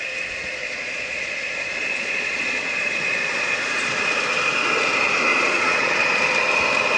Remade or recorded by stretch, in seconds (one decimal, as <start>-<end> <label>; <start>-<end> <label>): 0.0-0.6 recorded; 0.6-3.9 remade; 3.9-5.3 recorded; 5.3-6.2 remade; 6.2-7.0 recorded